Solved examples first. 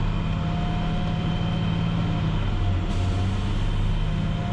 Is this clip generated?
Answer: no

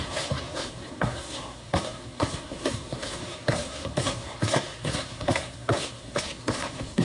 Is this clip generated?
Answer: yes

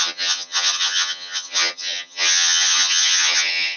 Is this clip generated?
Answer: yes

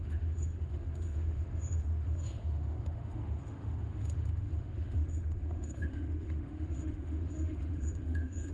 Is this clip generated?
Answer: yes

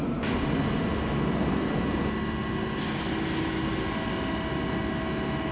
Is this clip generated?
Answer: no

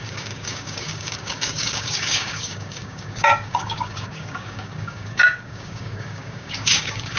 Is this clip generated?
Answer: yes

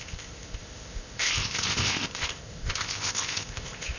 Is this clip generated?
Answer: yes